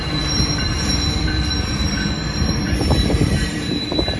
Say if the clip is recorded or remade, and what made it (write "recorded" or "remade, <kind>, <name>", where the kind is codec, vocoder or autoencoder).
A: remade, vocoder, BigVGAN v2